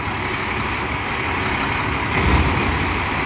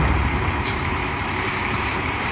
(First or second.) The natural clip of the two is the first